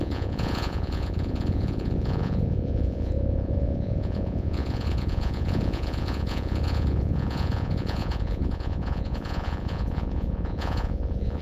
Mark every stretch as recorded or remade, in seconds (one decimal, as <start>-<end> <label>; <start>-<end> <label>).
0.0-11.4 remade